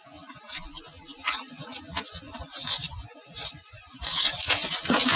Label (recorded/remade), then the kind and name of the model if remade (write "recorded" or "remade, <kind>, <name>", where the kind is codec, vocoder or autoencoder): remade, vocoder, Vocos